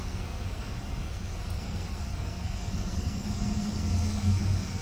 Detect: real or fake fake